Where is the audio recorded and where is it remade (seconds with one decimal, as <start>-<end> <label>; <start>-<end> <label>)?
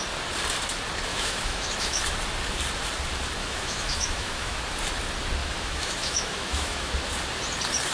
0.0-1.1 recorded; 1.1-2.0 remade; 2.0-3.4 recorded; 3.4-4.6 remade; 4.6-5.4 recorded; 5.4-6.9 remade; 6.9-7.9 recorded